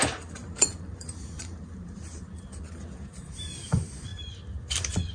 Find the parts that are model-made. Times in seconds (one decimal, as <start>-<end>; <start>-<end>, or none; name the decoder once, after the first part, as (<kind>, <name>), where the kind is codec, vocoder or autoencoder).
0.4-3.4 (vocoder, BigVGAN v2)